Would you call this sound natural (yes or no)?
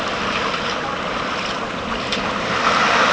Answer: yes